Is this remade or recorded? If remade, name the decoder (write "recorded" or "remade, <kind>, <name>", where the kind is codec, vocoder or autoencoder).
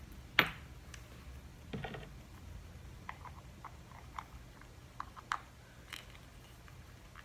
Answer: recorded